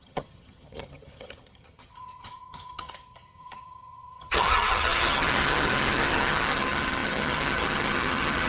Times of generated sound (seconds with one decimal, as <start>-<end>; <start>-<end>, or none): 0.0-8.5